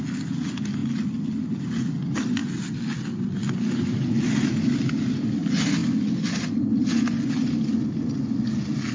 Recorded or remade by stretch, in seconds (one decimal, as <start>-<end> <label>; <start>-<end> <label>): 0.0-8.9 recorded